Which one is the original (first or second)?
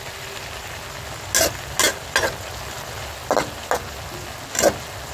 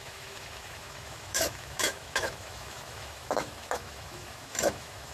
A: first